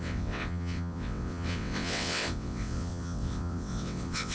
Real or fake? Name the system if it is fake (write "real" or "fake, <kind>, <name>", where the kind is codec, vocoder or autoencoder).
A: fake, vocoder, WaveNeXt